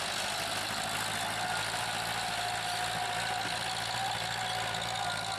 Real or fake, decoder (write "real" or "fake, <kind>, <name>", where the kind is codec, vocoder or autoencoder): real